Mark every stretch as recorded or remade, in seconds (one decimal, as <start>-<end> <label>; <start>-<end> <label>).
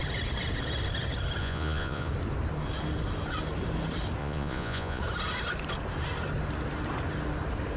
0.0-1.4 recorded; 1.4-2.1 remade; 2.1-4.2 recorded; 4.2-5.0 remade; 5.0-7.8 recorded